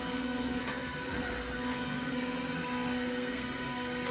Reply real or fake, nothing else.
fake